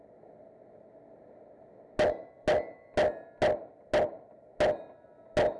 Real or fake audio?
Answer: real